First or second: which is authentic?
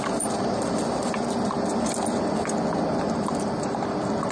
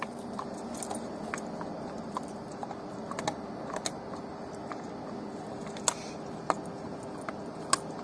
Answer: second